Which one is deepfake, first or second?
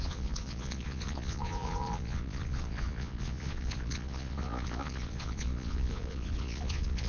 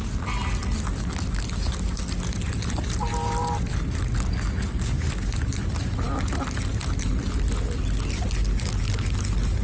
first